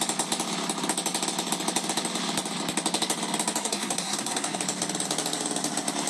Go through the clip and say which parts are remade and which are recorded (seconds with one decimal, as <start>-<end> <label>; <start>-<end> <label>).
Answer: 0.0-3.6 recorded; 3.6-4.6 remade; 4.6-6.1 recorded